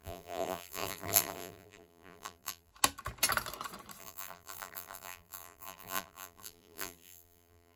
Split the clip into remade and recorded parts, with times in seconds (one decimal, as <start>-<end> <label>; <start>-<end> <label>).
0.0-2.7 remade; 2.7-4.0 recorded; 4.0-7.8 remade